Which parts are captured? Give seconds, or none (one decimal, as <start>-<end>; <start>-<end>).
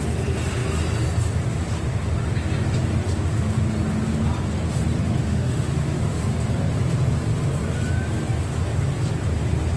0.0-5.2; 6.2-9.8